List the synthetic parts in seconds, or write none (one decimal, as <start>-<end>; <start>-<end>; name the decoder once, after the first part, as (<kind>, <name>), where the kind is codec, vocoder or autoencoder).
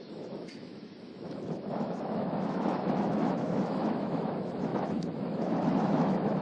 0.0-6.4 (autoencoder, DAC-VAE)